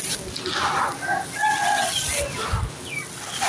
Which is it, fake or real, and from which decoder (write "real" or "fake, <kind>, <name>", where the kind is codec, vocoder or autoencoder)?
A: real